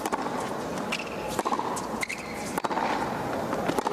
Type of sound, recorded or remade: recorded